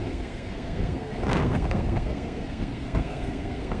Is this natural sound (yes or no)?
no